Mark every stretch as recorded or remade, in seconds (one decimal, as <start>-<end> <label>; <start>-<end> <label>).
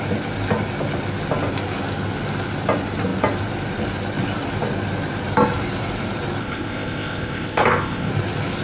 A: 0.0-6.4 recorded; 6.4-8.1 remade; 8.1-8.6 recorded